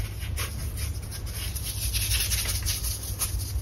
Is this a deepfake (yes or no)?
no